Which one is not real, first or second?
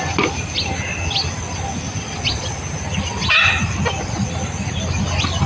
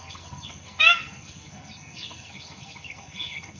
second